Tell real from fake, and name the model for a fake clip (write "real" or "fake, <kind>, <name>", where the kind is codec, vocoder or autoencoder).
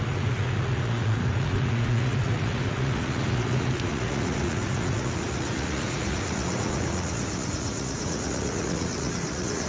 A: fake, vocoder, Vocos